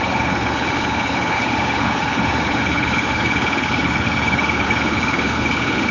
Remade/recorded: remade